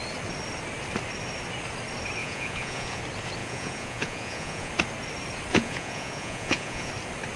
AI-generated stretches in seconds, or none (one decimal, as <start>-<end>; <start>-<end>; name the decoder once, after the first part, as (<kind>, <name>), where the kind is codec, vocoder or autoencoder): 2.2-3.0 (vocoder, Vocos); 3.4-4.7; 5.5-6.9

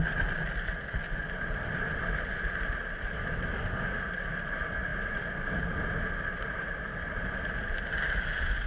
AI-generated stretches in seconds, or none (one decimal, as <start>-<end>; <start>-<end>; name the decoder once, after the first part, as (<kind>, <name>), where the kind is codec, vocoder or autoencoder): none

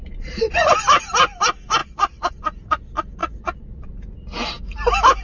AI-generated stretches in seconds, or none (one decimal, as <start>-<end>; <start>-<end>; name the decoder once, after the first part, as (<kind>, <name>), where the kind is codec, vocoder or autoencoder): 0.0-0.7 (vocoder, Vocos); 1.8-2.3; 3.2-3.9